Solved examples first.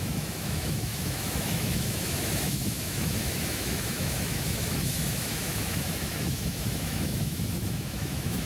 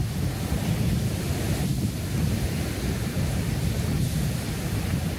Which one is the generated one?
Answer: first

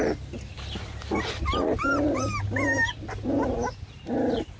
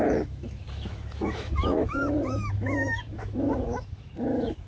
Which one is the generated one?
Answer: second